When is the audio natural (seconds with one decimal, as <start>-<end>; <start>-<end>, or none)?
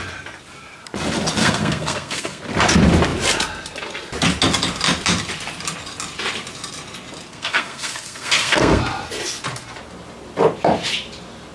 0.0-1.4; 2.4-7.3; 8.8-11.5